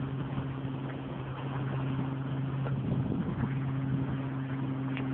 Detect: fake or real real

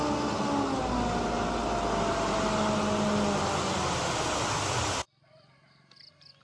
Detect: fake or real real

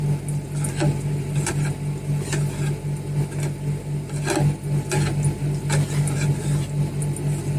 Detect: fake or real real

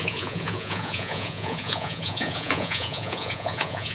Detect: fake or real fake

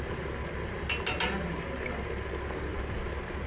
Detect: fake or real real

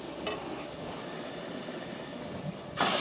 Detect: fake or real real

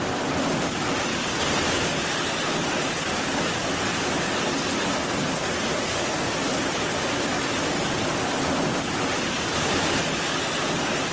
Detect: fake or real real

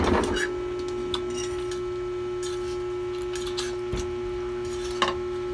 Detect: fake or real real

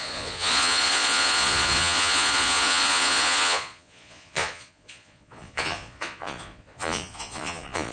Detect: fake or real fake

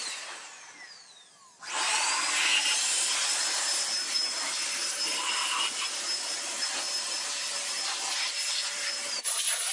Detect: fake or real fake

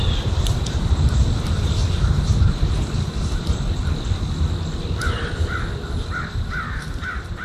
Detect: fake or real real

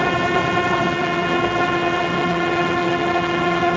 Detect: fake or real fake